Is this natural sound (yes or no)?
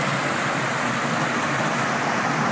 yes